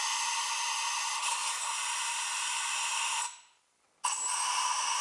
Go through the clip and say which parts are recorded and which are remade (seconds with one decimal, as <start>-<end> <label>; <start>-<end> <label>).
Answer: 0.0-1.4 recorded; 1.4-3.2 remade; 3.2-5.0 recorded